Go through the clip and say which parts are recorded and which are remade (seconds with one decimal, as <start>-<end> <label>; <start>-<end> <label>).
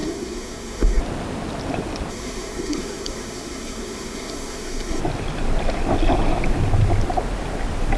0.0-1.0 remade; 1.0-2.1 recorded; 2.1-5.0 remade; 5.0-8.0 recorded